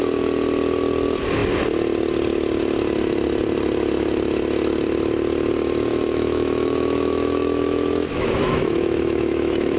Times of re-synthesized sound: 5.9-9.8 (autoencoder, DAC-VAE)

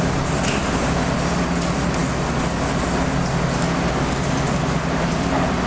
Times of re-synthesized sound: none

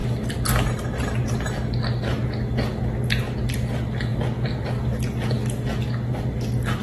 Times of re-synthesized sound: none

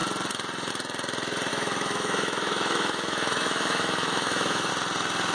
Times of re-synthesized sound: 1.5-4.7 (autoencoder, DAC-VAE)

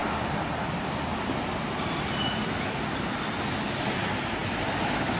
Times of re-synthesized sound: none

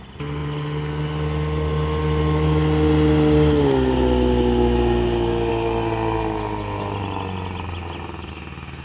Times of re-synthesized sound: none

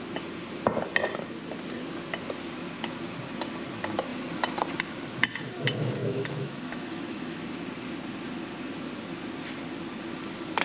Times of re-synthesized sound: 6.0-7.4 (autoencoder, DAC-VAE)

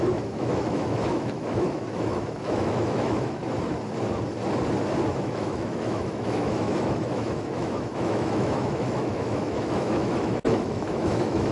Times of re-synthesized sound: 0.0-3.4 (autoencoder, DAC-VAE); 5.1-11.5